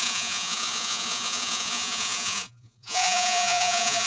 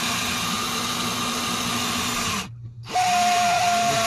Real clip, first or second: second